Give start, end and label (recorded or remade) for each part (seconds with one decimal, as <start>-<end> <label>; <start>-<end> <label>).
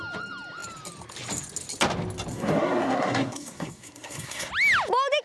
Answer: 0.0-2.3 recorded; 2.3-4.5 remade; 4.5-5.2 recorded